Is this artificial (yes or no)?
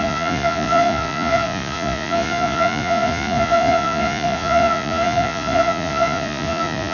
yes